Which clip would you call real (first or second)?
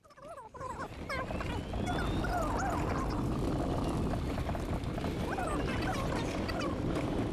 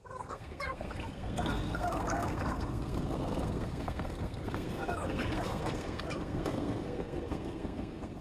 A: first